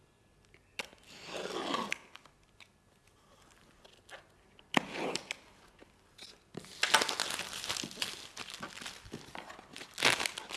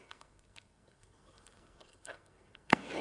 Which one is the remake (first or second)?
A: second